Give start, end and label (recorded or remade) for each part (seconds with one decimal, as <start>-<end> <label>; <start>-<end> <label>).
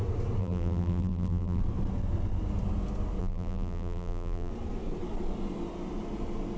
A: 0.0-0.4 recorded; 0.4-1.6 remade; 1.6-3.2 recorded; 3.2-4.5 remade; 4.5-6.6 recorded